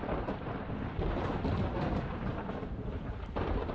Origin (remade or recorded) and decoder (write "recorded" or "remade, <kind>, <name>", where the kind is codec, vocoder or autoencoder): remade, vocoder, BigVGAN v2